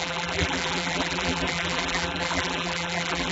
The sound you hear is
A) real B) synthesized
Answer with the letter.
B